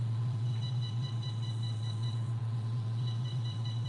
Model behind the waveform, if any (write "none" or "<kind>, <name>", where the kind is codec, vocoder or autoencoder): vocoder, WaveNeXt